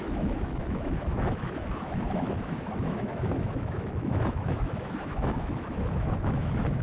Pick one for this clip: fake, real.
fake